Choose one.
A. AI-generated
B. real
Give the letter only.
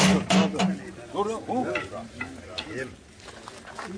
B